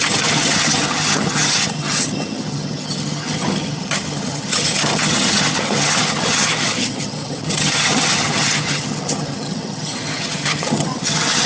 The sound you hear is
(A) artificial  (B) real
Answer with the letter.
A